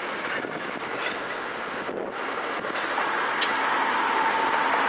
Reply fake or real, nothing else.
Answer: real